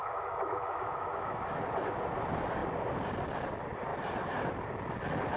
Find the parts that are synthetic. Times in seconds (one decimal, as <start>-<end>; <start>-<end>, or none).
0.0-1.6